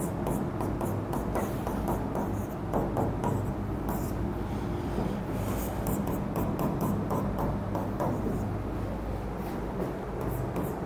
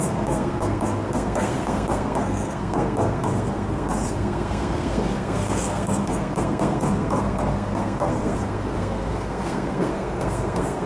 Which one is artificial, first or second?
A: second